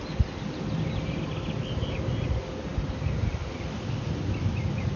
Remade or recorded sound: recorded